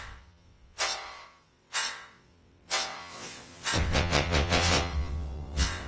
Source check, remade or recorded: remade